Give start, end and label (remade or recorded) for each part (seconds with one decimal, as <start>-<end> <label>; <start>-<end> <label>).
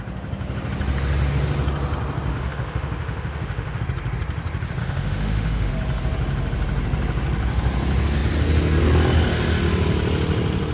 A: 0.0-2.3 recorded; 2.3-3.8 remade; 3.8-4.8 recorded; 4.8-5.7 remade; 5.7-10.7 recorded